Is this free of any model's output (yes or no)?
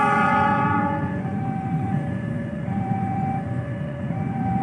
no